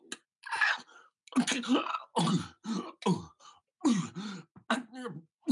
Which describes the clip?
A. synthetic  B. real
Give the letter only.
B